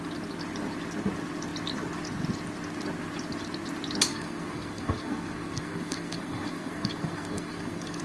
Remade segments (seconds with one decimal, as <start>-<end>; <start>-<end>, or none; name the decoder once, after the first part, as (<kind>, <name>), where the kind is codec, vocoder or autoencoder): 4.1-8.0 (codec, SNAC)